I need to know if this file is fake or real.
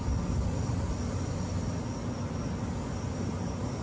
real